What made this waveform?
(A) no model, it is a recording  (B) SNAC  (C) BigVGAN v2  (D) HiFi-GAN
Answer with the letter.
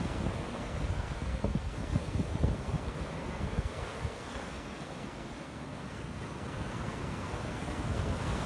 B